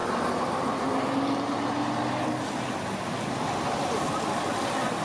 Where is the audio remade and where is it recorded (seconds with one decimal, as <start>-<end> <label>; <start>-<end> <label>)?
0.0-5.0 recorded